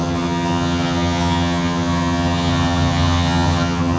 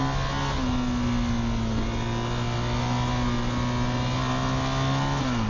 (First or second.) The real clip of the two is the second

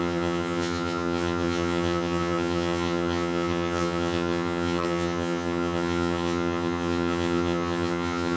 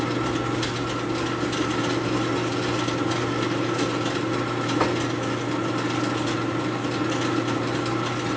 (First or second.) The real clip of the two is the second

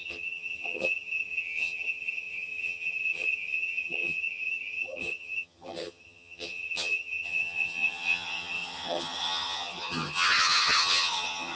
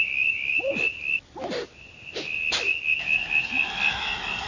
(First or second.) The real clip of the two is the second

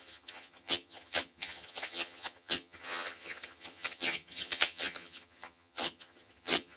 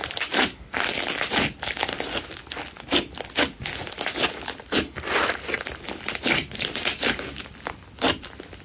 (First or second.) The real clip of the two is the second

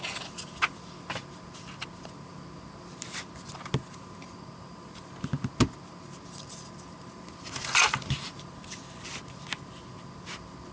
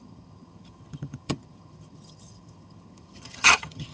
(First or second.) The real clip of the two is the first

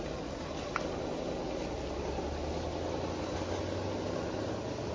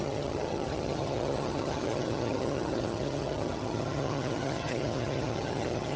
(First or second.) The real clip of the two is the first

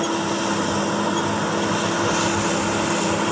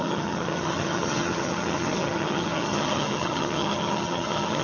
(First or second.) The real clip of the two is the first